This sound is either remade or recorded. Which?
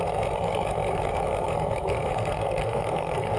remade